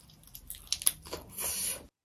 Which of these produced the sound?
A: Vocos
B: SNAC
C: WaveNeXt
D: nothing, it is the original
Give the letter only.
D